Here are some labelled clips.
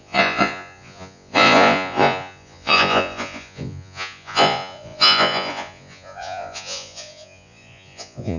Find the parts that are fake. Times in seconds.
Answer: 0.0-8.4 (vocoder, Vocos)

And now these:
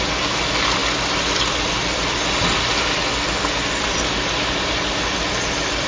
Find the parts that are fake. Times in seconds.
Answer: none

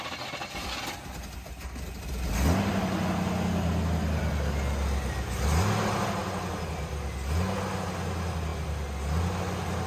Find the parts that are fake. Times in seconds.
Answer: none